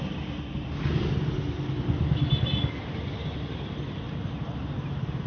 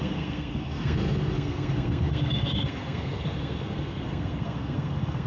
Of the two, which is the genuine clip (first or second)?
first